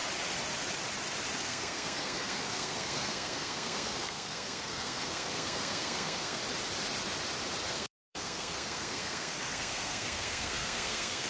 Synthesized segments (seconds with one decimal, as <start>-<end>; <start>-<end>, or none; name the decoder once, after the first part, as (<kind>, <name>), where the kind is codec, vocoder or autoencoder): 1.4-6.4 (codec, SNAC); 7.7-11.3